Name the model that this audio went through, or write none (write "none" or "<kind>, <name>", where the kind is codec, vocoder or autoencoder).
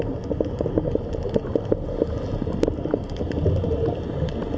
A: none